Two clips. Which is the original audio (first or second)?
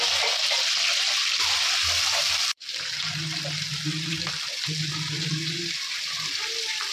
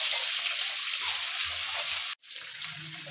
second